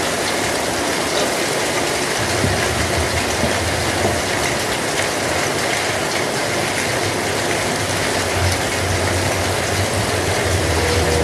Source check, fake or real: real